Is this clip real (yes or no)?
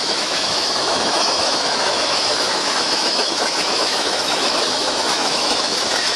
no